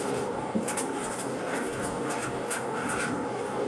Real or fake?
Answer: fake